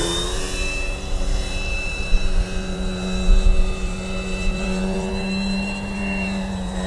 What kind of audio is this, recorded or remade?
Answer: remade